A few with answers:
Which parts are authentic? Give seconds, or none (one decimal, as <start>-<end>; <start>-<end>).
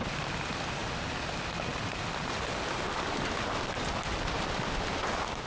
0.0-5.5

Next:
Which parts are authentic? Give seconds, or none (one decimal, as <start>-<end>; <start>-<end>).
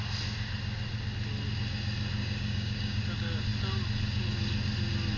0.0-2.2; 3.0-5.2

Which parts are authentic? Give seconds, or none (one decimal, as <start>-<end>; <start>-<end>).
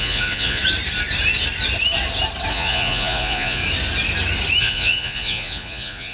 0.6-2.5; 3.6-4.6